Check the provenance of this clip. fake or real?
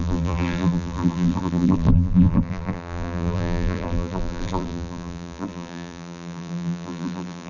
fake